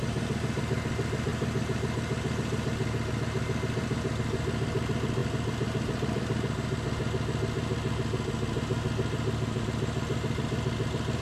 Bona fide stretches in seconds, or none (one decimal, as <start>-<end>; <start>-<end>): 0.0-11.2